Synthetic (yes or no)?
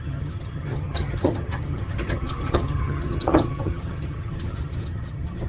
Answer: yes